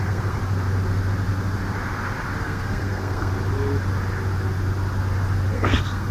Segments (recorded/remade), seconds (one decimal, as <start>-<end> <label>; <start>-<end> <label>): 0.0-0.4 remade; 0.4-2.4 recorded; 2.4-3.3 remade; 3.3-5.5 recorded; 5.5-6.1 remade